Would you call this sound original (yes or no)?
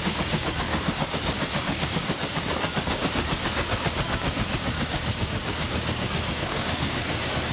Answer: no